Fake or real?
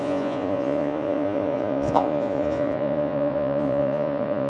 fake